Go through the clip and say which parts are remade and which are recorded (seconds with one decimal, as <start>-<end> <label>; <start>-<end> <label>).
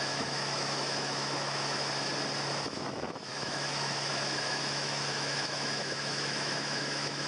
0.0-2.1 remade; 2.1-2.7 recorded; 2.7-7.3 remade